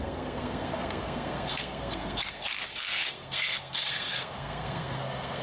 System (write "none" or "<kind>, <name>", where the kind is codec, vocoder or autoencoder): codec, SNAC